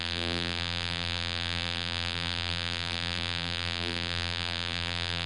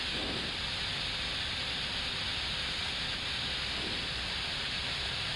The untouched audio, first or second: second